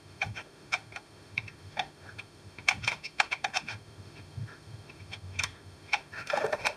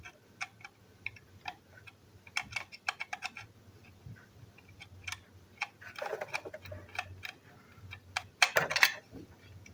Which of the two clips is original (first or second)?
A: second